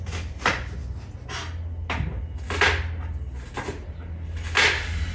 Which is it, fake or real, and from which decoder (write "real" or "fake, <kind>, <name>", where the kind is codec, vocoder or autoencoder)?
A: real